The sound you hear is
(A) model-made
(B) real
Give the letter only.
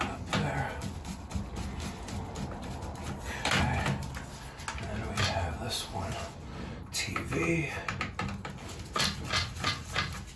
B